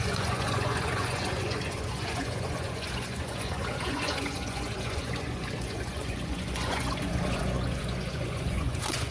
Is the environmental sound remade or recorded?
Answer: remade